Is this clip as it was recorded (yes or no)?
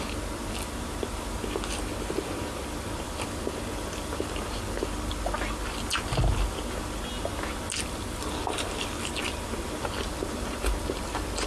yes